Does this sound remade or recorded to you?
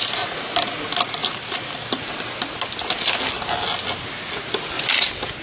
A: recorded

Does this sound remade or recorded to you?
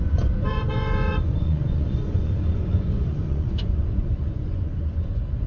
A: remade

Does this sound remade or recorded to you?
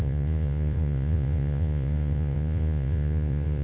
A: remade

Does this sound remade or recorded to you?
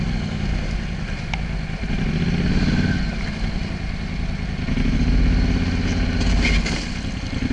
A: recorded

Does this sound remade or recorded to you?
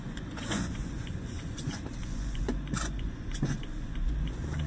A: remade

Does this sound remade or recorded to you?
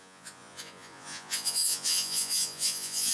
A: remade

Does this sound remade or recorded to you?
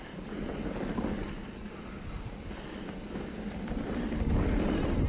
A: recorded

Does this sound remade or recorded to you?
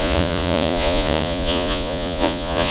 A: remade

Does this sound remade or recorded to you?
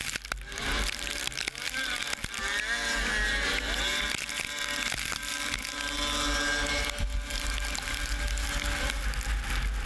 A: recorded